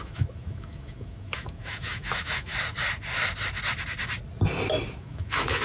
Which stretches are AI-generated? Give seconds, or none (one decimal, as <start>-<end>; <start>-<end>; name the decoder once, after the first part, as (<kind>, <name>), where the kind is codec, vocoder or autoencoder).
0.0-2.5 (autoencoder, DAC-VAE); 4.9-5.6